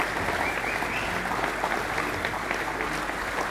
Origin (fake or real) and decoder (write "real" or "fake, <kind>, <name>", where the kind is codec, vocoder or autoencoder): real